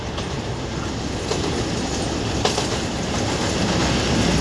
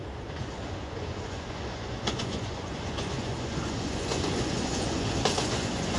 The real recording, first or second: first